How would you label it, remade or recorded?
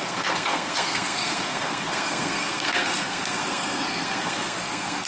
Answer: remade